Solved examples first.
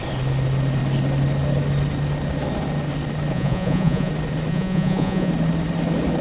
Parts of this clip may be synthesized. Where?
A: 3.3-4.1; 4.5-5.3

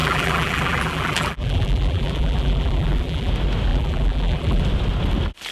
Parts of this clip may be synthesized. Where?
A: 0.0-3.3; 3.7-4.6

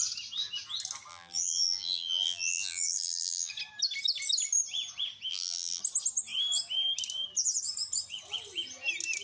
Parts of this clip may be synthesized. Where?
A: 1.1-3.5; 5.3-5.8

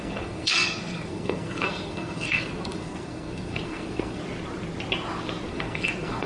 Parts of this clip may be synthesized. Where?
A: 0.0-4.2; 5.5-6.3

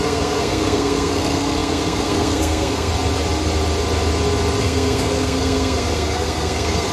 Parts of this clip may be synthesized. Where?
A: 0.0-2.9; 4.6-6.9

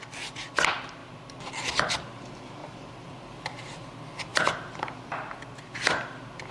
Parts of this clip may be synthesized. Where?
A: 1.0-1.5; 2.6-3.8; 4.3-5.2